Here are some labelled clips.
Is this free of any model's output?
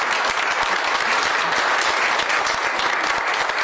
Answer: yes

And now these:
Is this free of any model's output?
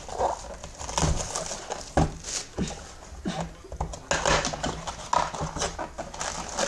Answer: yes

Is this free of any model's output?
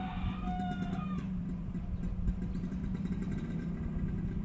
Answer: yes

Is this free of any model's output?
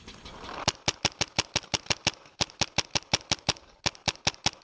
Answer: yes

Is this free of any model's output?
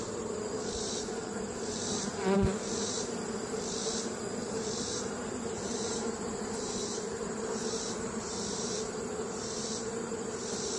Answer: no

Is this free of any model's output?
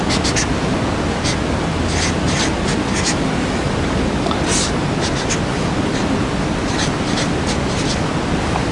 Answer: yes